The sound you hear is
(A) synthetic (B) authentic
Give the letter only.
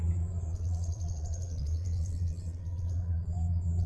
A